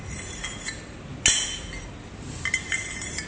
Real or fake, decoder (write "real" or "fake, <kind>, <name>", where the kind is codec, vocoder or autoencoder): real